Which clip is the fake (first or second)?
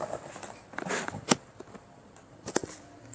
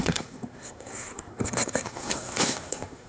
second